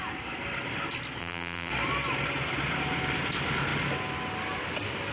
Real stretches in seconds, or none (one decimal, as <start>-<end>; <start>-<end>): 0.0-1.2; 1.7-5.1

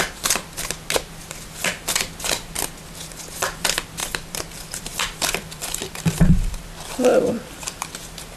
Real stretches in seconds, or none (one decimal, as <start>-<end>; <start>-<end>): 0.0-4.0; 6.6-7.1; 8.0-8.4